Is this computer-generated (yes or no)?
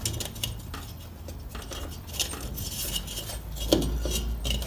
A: no